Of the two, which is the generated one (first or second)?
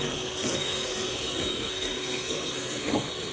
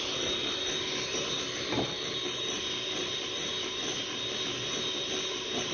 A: first